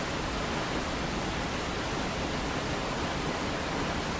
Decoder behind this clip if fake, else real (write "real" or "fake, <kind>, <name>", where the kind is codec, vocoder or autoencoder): real